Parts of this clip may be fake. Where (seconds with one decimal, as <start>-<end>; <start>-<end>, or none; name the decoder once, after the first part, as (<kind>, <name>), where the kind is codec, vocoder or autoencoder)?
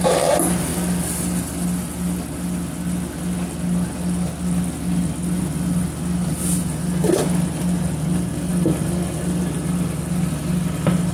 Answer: none